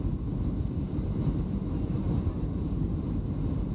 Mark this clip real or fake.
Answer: fake